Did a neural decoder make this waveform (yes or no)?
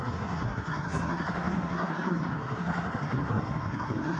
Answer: yes